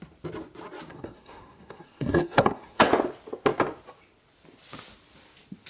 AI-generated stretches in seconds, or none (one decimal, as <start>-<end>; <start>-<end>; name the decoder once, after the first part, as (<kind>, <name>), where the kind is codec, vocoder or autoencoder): 0.9-2.9 (codec, SNAC)